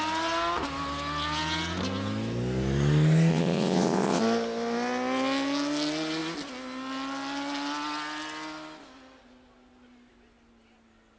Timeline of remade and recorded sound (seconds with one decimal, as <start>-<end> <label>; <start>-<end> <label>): 0.0-3.3 recorded; 3.3-4.2 remade; 4.2-11.2 recorded